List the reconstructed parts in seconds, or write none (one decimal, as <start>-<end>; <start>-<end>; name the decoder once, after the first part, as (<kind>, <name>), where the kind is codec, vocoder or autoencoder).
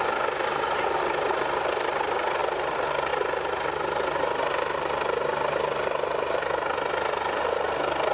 none